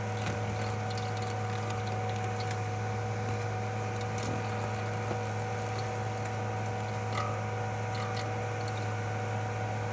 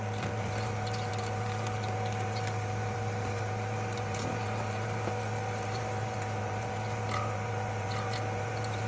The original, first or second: first